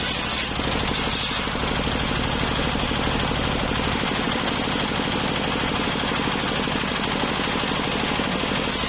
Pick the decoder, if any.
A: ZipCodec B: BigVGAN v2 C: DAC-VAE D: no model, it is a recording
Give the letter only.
D